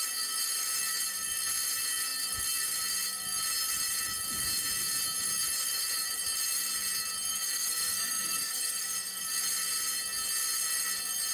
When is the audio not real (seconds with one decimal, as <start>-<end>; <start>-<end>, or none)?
7.3-9.2